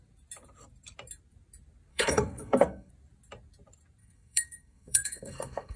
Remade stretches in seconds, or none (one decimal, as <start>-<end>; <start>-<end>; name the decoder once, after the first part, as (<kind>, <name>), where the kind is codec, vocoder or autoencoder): 1.9-2.9 (codec, SNAC); 4.0-5.8